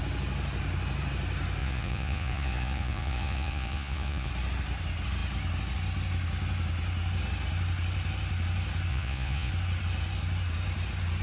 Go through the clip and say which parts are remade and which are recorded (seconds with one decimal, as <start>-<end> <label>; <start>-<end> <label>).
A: 0.0-1.6 recorded; 1.6-4.3 remade; 4.3-8.9 recorded; 8.9-9.5 remade; 9.5-11.2 recorded